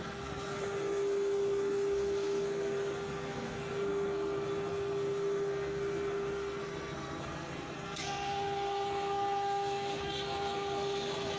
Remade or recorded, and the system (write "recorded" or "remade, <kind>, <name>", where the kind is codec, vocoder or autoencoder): remade, codec, SNAC